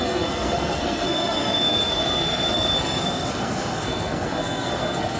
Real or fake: fake